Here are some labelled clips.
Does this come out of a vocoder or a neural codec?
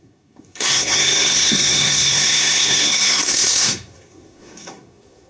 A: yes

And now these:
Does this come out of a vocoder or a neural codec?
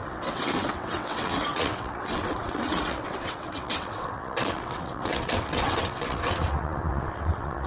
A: yes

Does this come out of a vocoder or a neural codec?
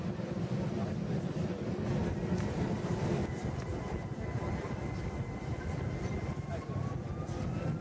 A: no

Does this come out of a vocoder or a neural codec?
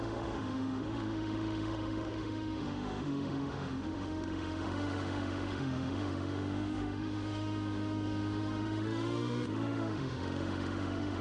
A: yes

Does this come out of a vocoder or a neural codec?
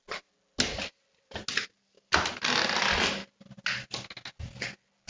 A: no